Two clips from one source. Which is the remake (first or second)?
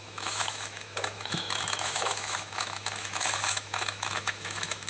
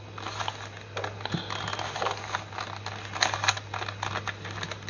first